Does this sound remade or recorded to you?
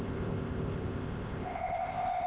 remade